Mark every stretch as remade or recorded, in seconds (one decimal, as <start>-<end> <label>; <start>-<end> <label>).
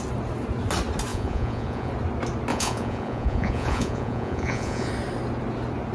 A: 0.0-1.1 recorded; 1.1-1.9 remade; 1.9-2.5 recorded; 2.5-4.9 remade; 4.9-5.9 recorded